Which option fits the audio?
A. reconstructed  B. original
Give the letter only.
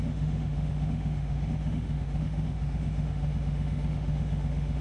A